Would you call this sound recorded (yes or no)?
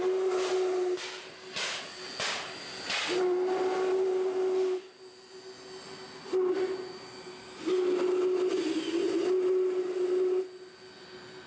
yes